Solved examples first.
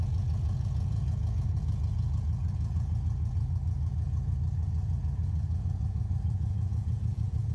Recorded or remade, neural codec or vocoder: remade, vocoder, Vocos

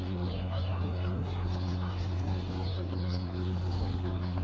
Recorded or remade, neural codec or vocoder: remade, codec, SNAC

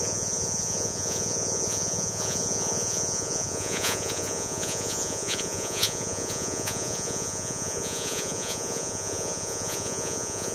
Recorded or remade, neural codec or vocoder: remade, vocoder, Vocos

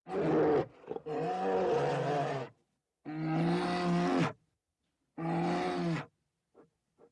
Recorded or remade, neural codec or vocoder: recorded